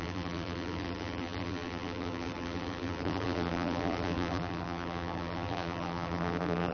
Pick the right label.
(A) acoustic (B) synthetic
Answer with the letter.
B